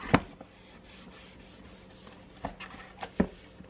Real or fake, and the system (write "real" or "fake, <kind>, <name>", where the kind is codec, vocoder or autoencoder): real